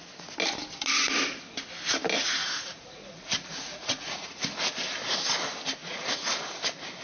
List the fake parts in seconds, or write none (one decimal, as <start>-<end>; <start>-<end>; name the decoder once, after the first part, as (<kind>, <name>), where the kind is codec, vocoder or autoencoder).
2.4-4.6 (vocoder, Vocos); 5.8-6.6